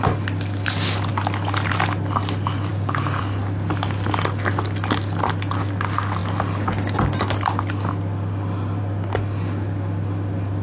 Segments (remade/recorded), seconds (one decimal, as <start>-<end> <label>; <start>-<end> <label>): 0.0-2.7 recorded; 2.7-3.2 remade; 3.2-10.6 recorded